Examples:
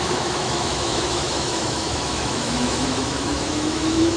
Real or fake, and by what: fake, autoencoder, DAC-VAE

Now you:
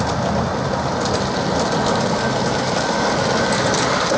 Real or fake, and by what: real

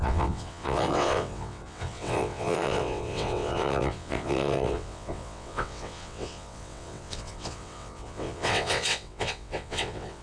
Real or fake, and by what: fake, vocoder, WaveNeXt